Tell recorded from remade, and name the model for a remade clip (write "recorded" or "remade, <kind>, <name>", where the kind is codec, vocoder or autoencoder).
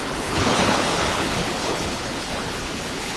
remade, codec, HILCodec